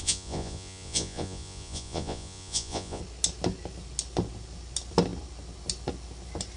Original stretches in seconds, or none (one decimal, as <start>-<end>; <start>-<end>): 3.0-6.6